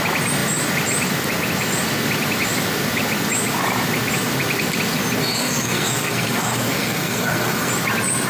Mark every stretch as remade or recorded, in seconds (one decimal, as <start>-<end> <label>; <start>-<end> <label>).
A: 0.0-5.2 recorded; 5.2-7.7 remade; 7.7-8.3 recorded